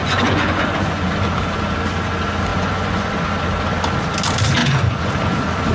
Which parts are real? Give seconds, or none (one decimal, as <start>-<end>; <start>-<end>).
1.1-2.5; 3.1-4.6; 5.1-5.7

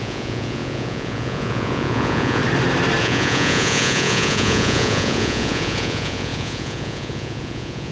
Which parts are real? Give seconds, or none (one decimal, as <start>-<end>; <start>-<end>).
2.4-3.0

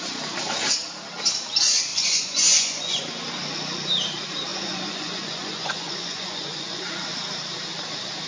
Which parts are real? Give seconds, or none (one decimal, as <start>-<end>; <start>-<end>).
0.0-1.9; 3.0-4.5; 6.8-8.3

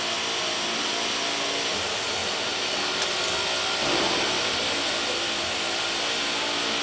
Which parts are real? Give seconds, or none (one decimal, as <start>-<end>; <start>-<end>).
0.0-2.2; 2.8-6.8